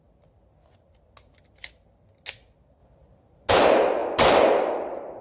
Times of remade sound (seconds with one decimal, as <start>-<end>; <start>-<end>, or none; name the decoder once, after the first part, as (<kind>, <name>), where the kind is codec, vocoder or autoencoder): none